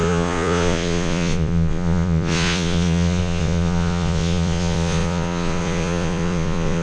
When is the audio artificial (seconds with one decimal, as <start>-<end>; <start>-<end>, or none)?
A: 0.0-6.8